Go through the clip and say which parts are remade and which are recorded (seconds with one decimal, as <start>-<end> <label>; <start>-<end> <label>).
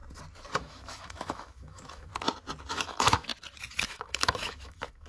0.0-0.6 recorded; 0.6-2.1 remade; 2.1-2.7 recorded; 2.7-3.3 remade; 3.3-3.9 recorded; 3.9-5.1 remade